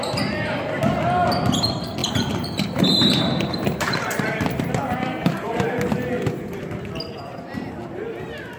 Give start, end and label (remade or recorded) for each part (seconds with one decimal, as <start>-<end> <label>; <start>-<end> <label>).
0.0-2.0 recorded; 2.0-4.2 remade; 4.2-5.2 recorded; 5.2-5.8 remade; 5.8-7.3 recorded; 7.3-7.9 remade; 7.9-8.6 recorded